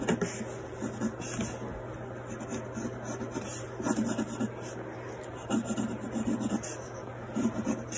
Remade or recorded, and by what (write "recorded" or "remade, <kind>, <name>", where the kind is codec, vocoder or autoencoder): recorded